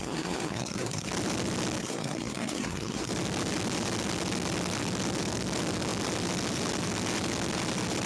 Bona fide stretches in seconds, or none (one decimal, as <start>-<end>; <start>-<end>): 1.1-1.8; 3.1-8.1